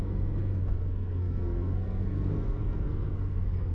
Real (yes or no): no